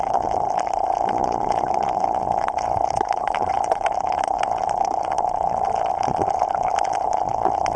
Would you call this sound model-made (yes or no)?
yes